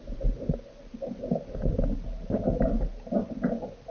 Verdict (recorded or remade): recorded